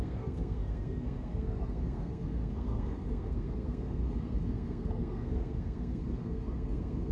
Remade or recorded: remade